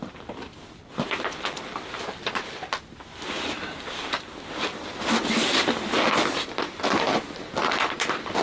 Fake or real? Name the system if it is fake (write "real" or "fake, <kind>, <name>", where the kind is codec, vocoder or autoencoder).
real